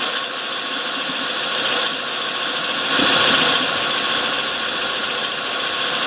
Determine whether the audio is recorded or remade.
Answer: recorded